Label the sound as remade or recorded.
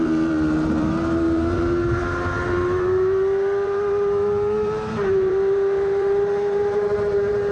remade